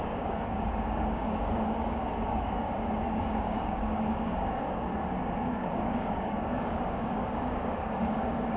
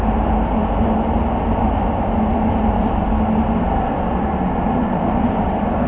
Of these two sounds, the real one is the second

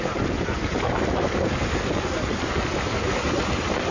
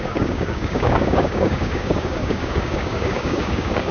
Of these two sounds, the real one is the first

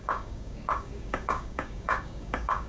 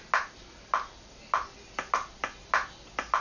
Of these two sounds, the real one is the second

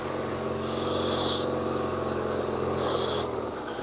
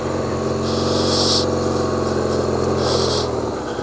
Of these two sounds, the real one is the second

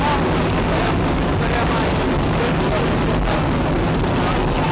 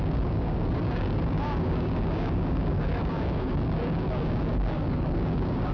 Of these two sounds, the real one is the first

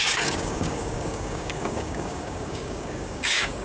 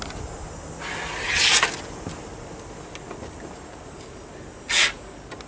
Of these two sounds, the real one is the second